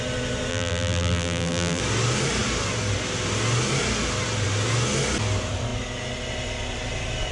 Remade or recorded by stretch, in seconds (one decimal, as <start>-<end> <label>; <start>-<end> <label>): 0.0-0.5 recorded; 0.5-1.8 remade; 1.8-7.3 recorded